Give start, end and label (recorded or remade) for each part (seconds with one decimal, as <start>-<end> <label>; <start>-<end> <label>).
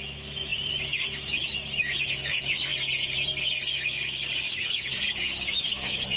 0.0-2.7 remade; 2.7-4.5 recorded; 4.5-6.2 remade